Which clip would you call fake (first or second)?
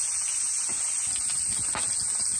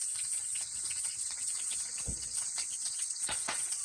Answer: second